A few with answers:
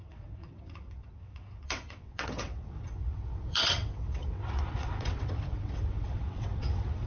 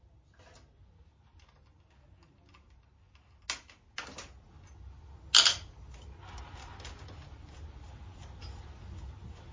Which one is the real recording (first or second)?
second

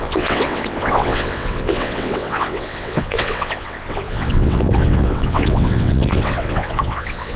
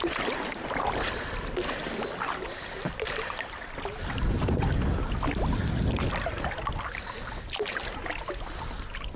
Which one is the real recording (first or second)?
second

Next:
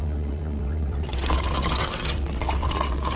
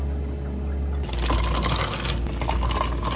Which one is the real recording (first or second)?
second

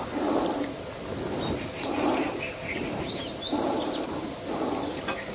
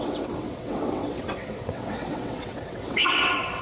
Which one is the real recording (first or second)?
first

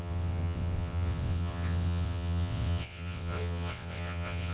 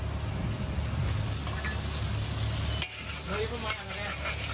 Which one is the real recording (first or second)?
second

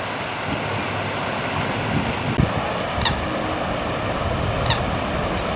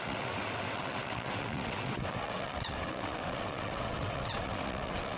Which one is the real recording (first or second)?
first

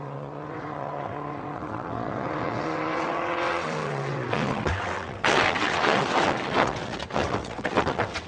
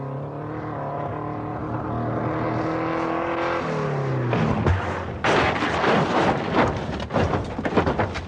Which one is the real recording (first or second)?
second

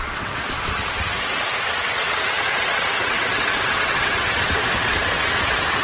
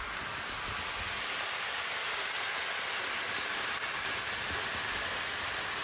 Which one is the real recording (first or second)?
second